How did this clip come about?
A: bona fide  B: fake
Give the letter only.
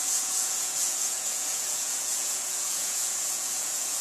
B